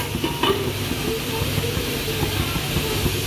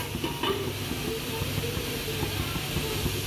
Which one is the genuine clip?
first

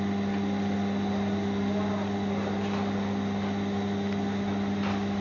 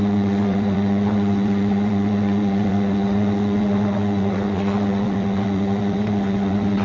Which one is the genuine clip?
first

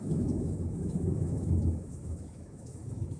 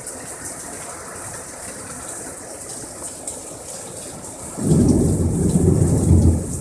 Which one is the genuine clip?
second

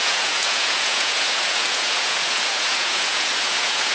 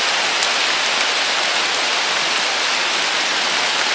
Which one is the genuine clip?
second